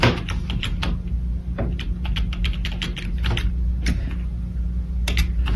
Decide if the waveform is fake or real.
real